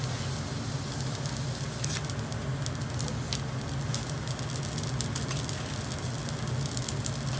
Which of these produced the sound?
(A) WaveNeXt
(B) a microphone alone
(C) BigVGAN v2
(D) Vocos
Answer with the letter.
B